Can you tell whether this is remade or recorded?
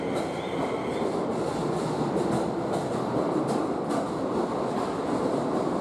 recorded